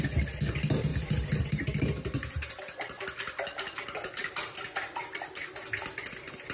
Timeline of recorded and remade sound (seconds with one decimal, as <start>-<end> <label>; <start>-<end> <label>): 0.0-0.9 recorded; 0.9-2.5 remade; 2.5-6.5 recorded

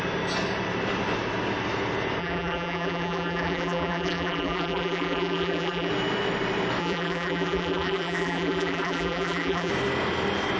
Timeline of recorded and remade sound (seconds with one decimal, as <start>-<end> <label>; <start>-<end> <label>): 0.0-2.2 recorded; 2.2-5.9 remade; 5.9-6.8 recorded; 6.8-9.7 remade; 9.7-10.6 recorded

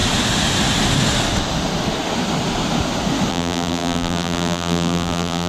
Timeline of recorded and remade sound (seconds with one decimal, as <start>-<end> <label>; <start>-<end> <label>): 0.0-3.3 recorded; 3.3-5.5 remade

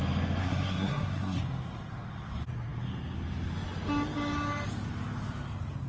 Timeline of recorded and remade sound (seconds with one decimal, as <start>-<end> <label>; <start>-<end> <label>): 0.0-0.4 recorded; 0.4-1.4 remade; 1.4-5.9 recorded